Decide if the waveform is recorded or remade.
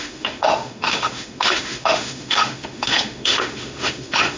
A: remade